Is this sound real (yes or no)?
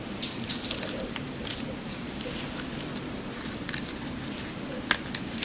yes